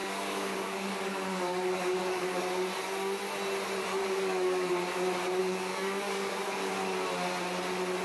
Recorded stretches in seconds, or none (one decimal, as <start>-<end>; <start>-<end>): 2.4-4.0; 4.7-5.4; 6.7-8.0